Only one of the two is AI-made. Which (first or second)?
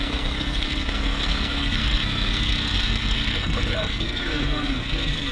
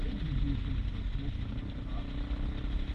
first